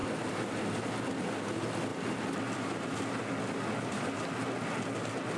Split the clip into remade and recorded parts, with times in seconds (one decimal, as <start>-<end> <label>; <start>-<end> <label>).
0.0-5.4 recorded